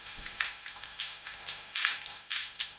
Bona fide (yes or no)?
no